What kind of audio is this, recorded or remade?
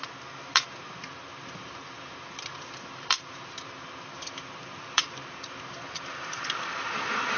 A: remade